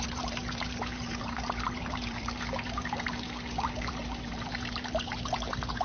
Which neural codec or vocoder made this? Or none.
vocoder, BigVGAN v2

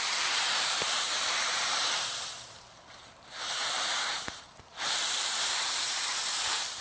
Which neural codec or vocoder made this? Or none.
vocoder, BigVGAN v2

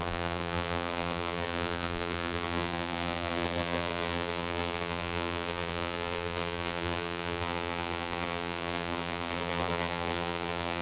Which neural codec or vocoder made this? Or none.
vocoder, BigVGAN v2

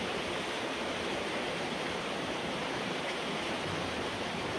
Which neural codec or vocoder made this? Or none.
vocoder, BigVGAN v2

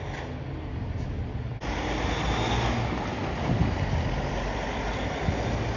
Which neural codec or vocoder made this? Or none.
none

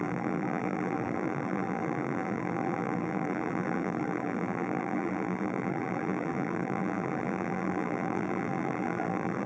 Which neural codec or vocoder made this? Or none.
vocoder, BigVGAN v2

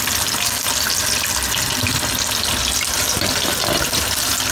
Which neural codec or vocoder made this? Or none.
none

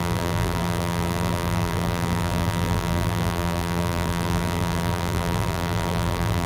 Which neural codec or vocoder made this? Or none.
vocoder, BigVGAN v2